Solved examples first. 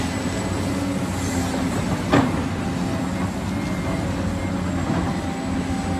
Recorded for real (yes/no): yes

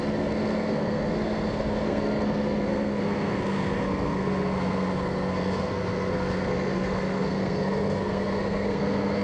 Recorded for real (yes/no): no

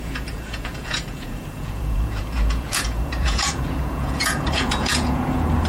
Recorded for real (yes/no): no